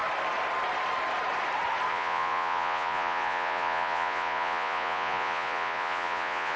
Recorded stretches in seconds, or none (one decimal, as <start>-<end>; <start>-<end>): 0.0-1.9